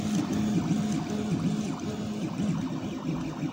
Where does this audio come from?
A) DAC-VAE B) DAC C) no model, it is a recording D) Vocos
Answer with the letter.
C